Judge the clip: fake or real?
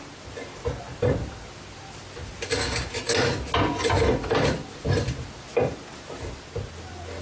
real